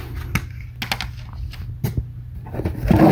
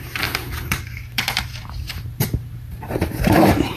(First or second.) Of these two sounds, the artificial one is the second